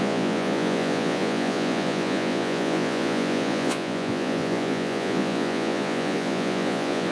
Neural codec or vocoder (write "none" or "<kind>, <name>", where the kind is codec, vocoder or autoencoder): vocoder, Vocos